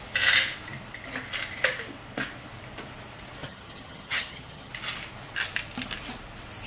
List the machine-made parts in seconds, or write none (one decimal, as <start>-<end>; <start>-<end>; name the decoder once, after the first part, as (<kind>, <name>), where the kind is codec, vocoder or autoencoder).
3.4-4.7 (vocoder, HiFi-GAN)